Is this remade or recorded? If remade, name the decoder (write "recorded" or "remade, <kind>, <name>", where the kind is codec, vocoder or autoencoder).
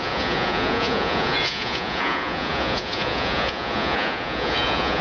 remade, vocoder, Vocos